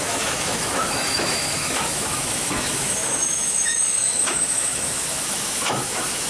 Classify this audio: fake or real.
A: fake